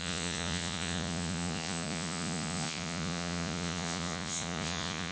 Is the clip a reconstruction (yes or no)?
yes